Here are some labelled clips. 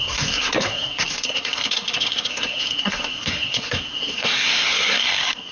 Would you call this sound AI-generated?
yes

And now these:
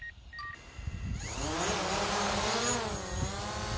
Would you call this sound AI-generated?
no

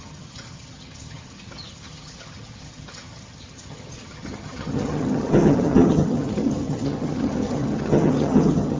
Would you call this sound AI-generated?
yes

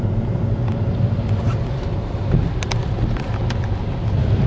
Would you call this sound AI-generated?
no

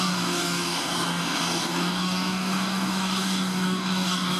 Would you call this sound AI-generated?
yes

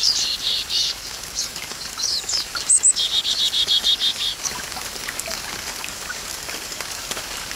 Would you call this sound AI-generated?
yes